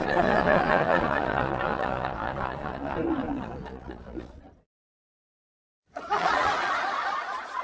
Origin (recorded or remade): remade